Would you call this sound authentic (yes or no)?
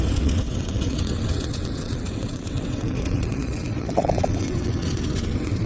no